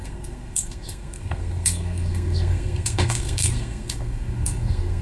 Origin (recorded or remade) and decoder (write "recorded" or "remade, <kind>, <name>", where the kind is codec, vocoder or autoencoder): remade, codec, SNAC